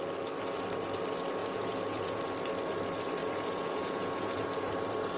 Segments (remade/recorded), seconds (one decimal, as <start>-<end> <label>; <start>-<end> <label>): 0.0-1.4 recorded; 1.4-2.2 remade; 2.2-3.2 recorded; 3.2-4.7 remade; 4.7-5.2 recorded